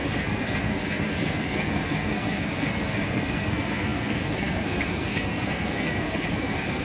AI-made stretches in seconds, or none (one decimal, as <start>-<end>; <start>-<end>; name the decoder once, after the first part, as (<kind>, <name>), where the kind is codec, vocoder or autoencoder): 0.0-6.8 (codec, SNAC)